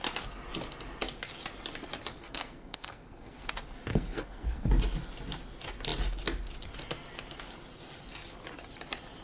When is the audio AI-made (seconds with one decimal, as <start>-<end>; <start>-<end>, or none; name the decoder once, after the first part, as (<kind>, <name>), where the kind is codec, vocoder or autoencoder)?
2.1-3.5 (codec, SNAC); 3.9-4.7